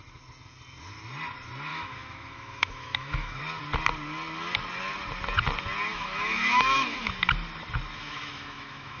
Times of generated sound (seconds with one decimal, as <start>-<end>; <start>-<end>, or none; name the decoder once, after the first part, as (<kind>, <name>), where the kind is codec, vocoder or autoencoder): 1.7-3.4 (autoencoder, DAC-VAE); 5.9-7.1; 8.0-9.0